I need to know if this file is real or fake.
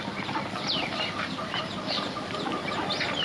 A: real